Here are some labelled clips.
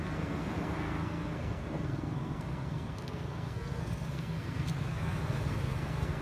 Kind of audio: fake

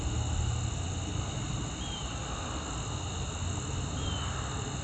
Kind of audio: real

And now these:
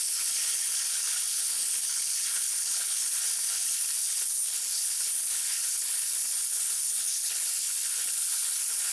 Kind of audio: fake